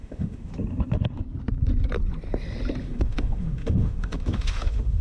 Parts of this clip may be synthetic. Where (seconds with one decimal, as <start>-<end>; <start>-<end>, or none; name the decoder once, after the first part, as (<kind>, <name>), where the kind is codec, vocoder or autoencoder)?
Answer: 0.0-0.5 (autoencoder, DAC-VAE); 2.8-5.0